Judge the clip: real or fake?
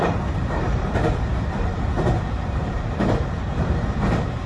fake